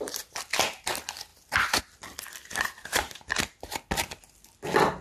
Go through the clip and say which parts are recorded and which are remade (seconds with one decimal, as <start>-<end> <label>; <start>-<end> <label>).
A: 0.0-3.0 recorded; 3.0-3.7 remade; 3.7-5.0 recorded